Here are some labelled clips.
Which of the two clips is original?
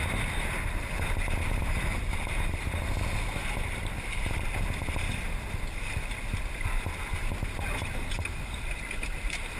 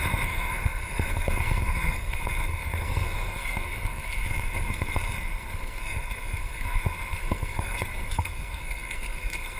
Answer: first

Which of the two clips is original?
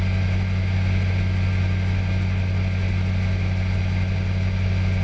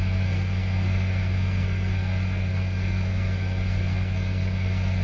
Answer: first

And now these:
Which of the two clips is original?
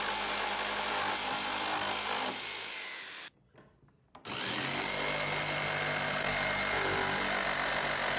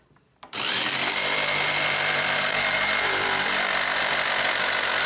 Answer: first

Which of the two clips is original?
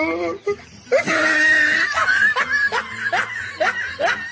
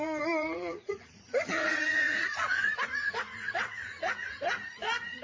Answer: first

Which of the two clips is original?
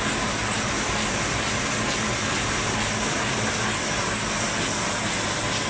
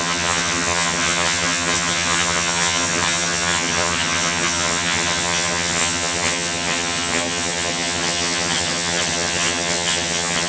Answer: first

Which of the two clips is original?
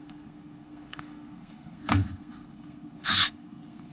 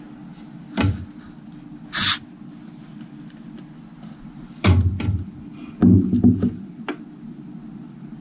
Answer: second